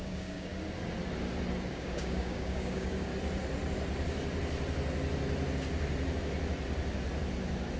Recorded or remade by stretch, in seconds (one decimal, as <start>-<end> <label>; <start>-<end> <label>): 0.0-0.5 remade; 0.5-1.7 recorded; 1.7-3.1 remade; 3.1-7.8 recorded